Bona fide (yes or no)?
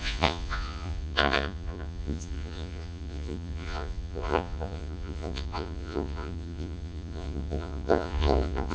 no